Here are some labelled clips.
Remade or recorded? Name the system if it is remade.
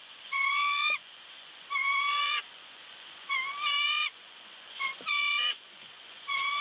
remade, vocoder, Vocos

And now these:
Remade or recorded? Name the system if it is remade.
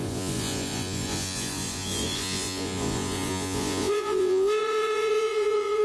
remade, vocoder, Vocos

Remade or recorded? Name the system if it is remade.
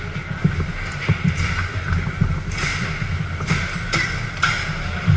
recorded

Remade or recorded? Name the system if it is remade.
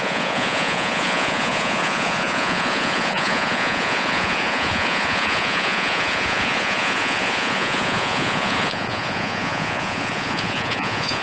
remade, vocoder, Vocos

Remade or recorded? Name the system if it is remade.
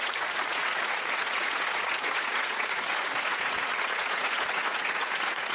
remade, vocoder, Vocos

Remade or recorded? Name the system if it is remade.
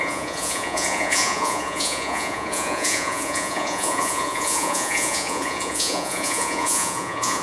remade, vocoder, Vocos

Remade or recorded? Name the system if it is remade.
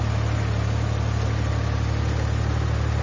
recorded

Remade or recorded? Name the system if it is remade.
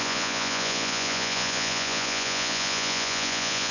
remade, vocoder, Vocos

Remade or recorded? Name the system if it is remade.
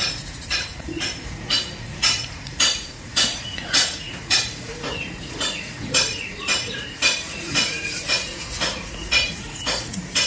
remade, vocoder, Vocos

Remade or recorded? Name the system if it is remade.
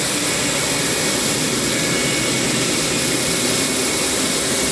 recorded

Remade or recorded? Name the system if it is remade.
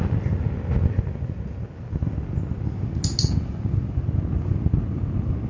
recorded